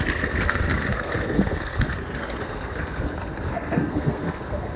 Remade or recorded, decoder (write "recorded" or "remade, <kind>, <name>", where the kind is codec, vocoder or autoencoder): remade, codec, SNAC